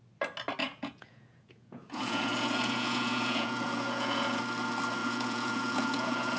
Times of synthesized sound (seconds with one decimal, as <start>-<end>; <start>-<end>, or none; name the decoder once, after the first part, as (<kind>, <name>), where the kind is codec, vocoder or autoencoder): 0.6-4.4 (vocoder, Vocos); 5.0-6.4